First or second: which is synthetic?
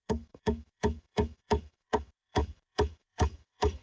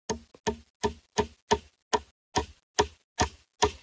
first